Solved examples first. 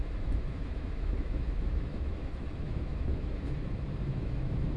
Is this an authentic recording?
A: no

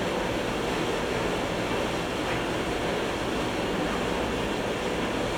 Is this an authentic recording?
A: yes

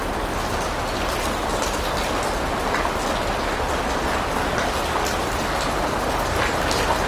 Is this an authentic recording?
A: yes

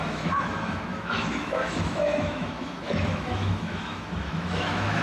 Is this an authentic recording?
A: no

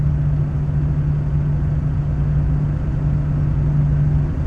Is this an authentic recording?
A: yes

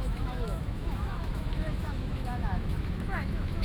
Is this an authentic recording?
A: no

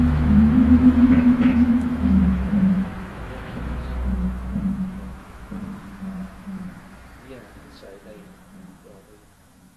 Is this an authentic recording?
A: no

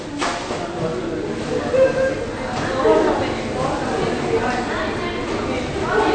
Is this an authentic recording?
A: yes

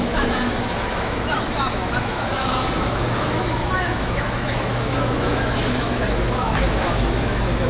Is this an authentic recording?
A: no